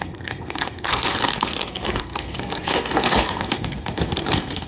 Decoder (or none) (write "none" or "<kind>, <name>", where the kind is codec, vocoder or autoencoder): codec, SNAC